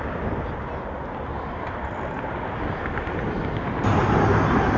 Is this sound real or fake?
real